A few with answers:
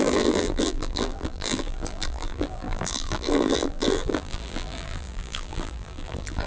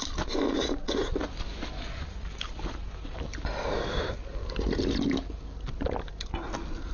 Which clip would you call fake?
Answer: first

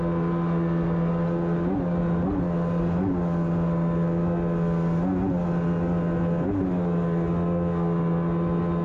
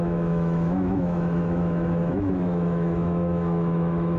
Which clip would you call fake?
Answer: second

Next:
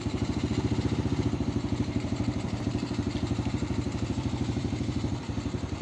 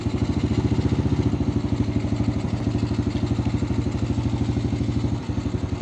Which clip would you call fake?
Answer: first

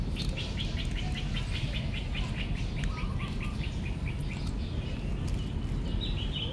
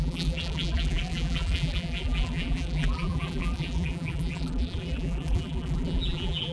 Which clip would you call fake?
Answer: second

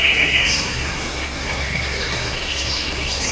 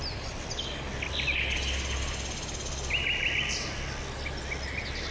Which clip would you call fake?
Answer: first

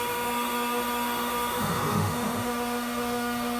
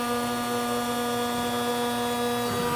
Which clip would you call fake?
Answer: first